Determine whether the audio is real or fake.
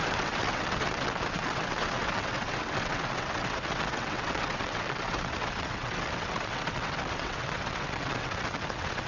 fake